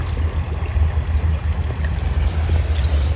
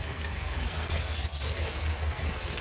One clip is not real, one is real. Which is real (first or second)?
first